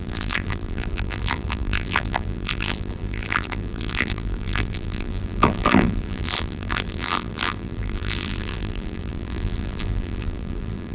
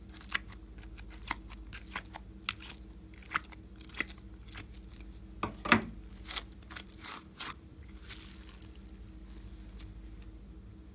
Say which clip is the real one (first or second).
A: second